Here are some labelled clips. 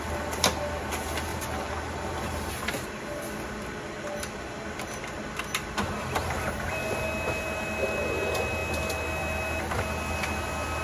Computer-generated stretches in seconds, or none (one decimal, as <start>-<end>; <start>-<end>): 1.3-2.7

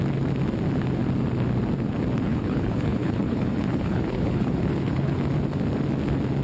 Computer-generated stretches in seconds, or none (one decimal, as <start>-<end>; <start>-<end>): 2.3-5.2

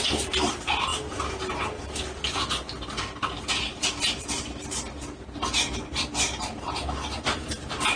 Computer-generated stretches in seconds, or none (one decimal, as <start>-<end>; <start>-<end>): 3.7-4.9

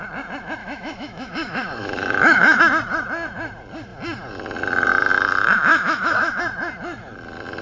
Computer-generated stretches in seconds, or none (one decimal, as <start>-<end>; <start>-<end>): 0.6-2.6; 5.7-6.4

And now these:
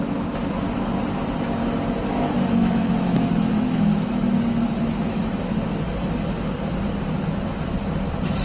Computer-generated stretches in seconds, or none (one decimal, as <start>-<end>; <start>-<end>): 2.6-5.7